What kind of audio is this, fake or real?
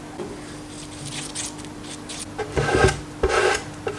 real